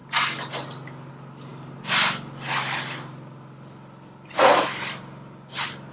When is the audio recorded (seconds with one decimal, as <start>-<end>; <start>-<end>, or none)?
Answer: 0.0-5.9